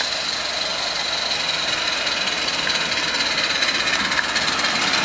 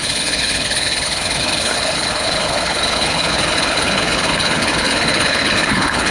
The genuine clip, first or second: first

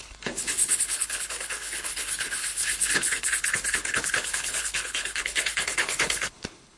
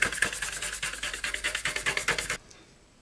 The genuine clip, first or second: second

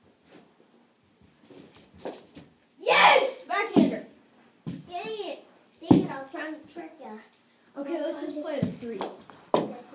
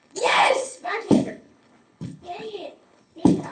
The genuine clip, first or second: first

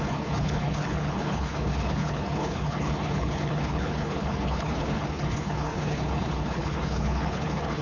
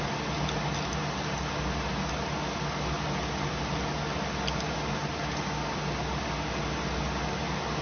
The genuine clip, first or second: second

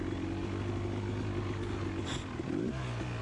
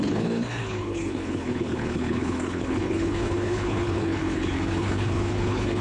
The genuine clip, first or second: first